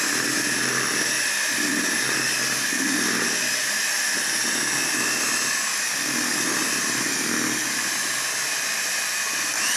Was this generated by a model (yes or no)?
no